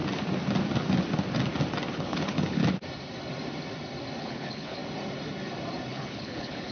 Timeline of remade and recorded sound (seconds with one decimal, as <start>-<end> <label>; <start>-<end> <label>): 0.0-1.9 recorded; 1.9-2.6 remade; 2.6-4.2 recorded; 4.2-4.8 remade; 4.8-5.9 recorded; 5.9-6.7 remade